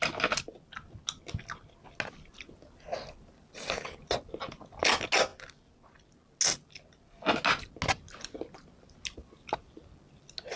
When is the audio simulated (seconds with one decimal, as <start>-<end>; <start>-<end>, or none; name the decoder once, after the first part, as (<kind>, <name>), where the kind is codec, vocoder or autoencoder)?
none